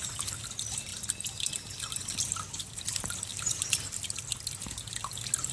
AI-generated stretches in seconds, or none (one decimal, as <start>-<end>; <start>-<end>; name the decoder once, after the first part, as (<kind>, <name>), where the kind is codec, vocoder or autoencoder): 3.3-4.2 (vocoder, BigVGAN v2)